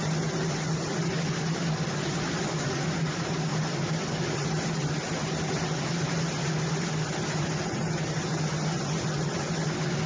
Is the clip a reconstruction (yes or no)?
no